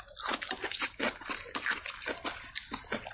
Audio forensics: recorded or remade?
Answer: recorded